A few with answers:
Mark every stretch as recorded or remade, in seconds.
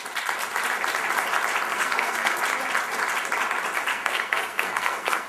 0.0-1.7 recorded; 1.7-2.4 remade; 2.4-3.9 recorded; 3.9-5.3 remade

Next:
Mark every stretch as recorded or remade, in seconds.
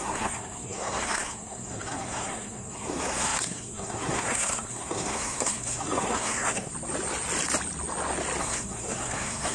0.0-6.7 remade; 6.7-8.4 recorded; 8.4-9.5 remade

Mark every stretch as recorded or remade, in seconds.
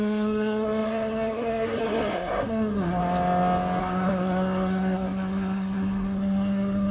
0.0-3.0 remade; 3.0-3.8 recorded; 3.8-6.9 remade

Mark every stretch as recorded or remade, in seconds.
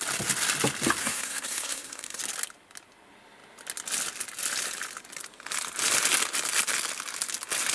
0.0-1.0 recorded; 1.0-2.2 remade; 2.2-7.7 recorded